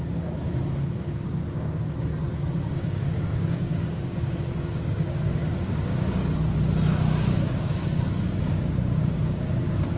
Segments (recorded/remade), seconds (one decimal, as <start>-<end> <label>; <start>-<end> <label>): 0.0-2.1 remade; 2.1-2.7 recorded; 2.7-6.2 remade; 6.2-6.9 recorded; 6.9-10.0 remade